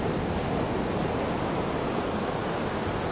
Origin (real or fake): real